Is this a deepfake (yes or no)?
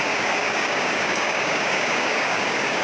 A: yes